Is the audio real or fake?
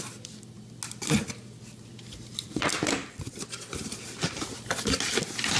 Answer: real